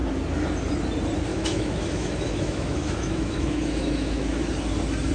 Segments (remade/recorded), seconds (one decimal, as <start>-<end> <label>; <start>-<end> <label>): 0.0-1.3 recorded; 1.3-4.4 remade; 4.4-5.1 recorded